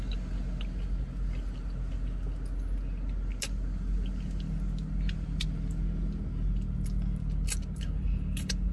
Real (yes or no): yes